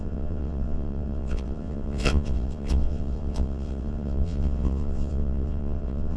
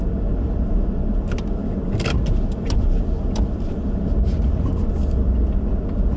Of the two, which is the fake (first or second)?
first